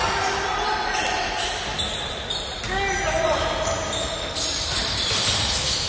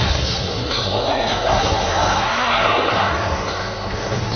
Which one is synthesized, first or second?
second